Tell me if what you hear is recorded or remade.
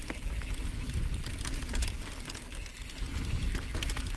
recorded